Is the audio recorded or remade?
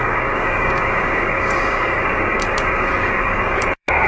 remade